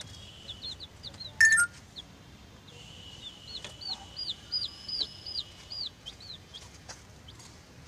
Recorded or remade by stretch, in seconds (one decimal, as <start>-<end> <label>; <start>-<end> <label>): 0.0-4.2 recorded; 4.2-7.0 remade; 7.0-7.9 recorded